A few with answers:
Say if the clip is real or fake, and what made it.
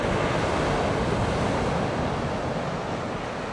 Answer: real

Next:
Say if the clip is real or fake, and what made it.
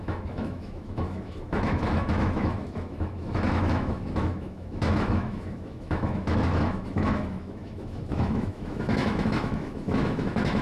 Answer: fake, autoencoder, DAC-VAE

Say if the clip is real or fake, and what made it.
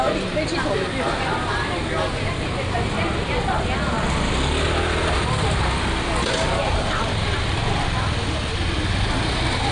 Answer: real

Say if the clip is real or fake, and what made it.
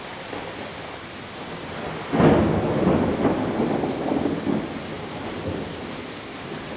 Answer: real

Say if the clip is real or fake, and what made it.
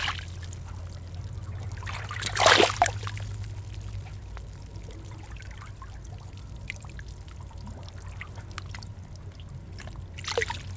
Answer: real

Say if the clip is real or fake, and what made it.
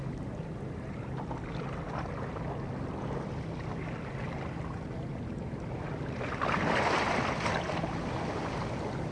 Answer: real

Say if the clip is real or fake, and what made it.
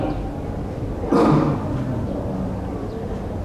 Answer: real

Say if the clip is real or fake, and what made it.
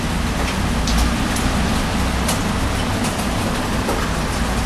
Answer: real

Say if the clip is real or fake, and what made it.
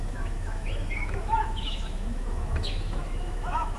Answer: fake, autoencoder, DAC-VAE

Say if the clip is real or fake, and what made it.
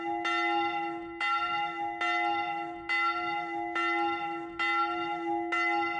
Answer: real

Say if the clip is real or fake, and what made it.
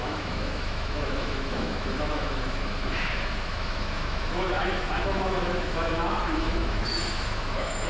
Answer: fake, autoencoder, DAC-VAE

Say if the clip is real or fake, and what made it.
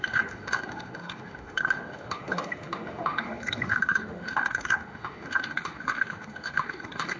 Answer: fake, autoencoder, DAC-VAE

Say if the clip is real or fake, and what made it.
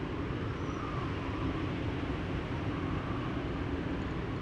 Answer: real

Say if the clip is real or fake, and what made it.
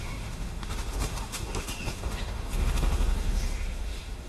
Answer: fake, autoencoder, DAC-VAE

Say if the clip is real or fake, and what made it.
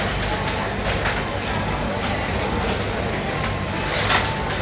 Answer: real